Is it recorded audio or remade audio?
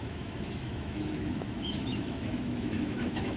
remade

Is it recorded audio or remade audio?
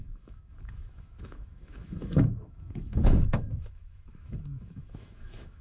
remade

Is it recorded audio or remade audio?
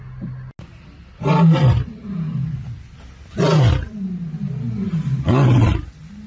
recorded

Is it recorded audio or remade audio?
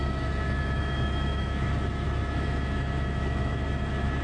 remade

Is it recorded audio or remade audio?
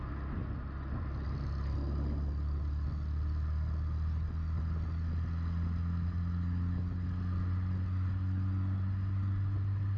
recorded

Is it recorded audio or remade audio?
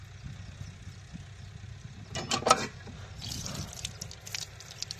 recorded